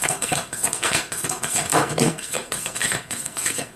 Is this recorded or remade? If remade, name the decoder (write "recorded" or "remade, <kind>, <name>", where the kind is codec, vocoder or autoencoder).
remade, codec, SNAC